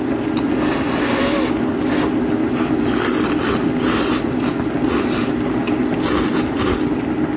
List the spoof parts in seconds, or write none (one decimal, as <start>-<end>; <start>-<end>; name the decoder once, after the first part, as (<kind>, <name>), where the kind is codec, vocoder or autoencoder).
none